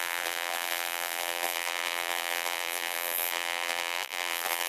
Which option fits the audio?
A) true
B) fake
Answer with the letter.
B